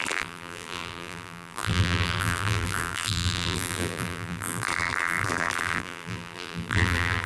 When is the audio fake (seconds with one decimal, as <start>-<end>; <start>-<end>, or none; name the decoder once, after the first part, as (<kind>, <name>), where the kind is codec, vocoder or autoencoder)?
0.0-7.3 (vocoder, BigVGAN v2)